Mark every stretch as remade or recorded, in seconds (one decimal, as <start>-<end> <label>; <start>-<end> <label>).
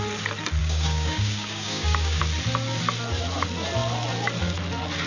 0.0-0.6 recorded; 0.6-2.2 remade; 2.2-5.1 recorded